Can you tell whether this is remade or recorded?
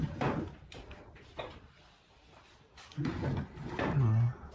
recorded